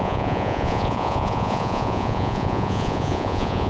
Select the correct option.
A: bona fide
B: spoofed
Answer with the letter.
B